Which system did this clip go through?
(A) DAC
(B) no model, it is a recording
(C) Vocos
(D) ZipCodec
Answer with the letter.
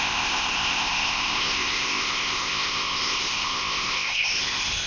D